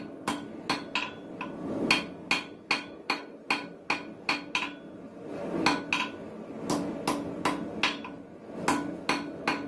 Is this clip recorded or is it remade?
recorded